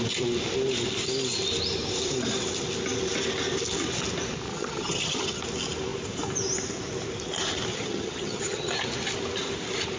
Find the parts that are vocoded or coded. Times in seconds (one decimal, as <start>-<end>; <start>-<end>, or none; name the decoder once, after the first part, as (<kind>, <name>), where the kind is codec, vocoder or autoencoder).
4.5-5.4 (vocoder, HiFi-GAN); 7.7-8.7